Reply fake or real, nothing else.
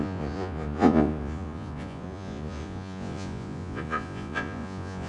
fake